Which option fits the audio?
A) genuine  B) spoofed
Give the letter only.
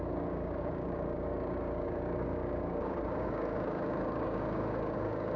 B